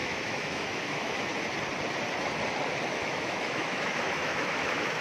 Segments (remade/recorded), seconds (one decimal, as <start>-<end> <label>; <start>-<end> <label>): 0.0-1.3 remade; 1.3-2.9 recorded; 2.9-5.0 remade